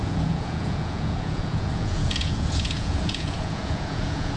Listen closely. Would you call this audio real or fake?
fake